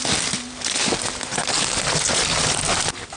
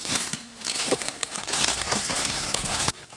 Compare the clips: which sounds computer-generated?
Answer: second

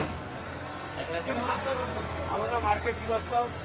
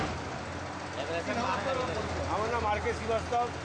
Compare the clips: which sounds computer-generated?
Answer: first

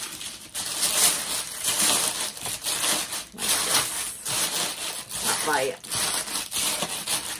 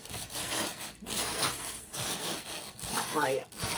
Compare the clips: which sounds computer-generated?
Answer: second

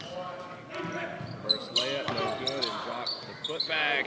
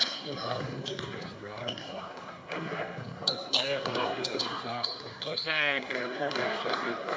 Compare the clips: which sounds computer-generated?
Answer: second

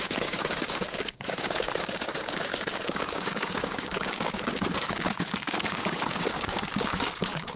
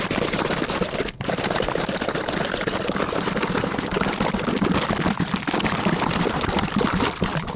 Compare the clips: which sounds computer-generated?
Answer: first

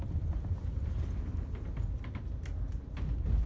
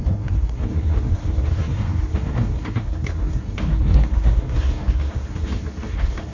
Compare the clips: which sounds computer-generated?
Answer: second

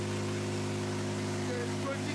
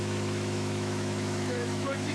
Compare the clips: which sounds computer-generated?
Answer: second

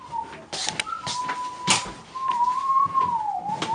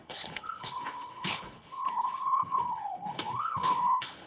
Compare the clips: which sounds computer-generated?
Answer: second